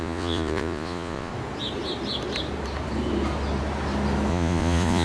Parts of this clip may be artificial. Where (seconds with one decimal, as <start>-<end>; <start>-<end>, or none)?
0.0-1.3; 4.3-5.0